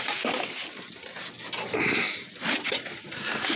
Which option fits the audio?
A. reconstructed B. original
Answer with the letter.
B